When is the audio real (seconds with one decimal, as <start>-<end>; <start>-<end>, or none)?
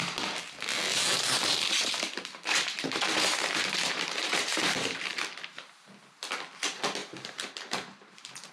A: 0.0-0.9; 5.9-7.0